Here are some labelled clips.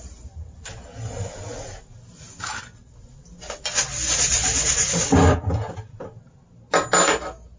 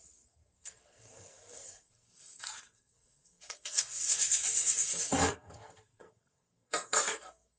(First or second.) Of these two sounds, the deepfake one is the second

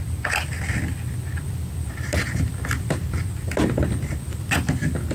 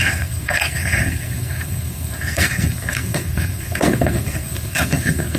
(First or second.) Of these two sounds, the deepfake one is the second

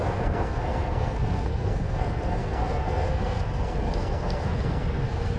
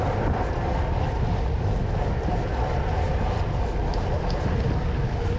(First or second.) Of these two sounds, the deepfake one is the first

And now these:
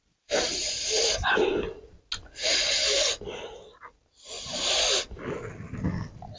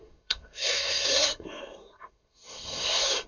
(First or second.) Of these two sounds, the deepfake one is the second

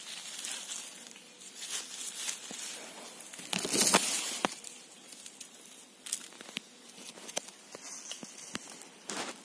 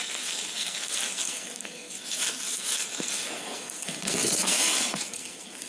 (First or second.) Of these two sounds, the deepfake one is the second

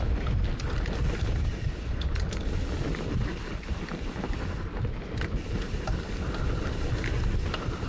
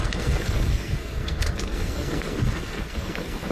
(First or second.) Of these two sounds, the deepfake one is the second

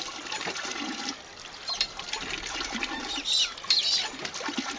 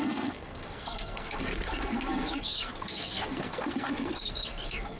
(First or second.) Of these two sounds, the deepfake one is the second